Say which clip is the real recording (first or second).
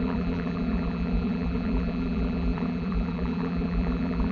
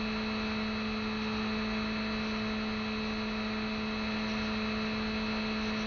second